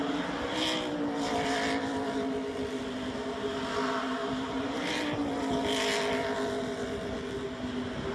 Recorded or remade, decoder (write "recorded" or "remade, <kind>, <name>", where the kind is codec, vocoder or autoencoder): recorded